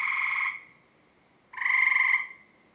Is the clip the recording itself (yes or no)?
yes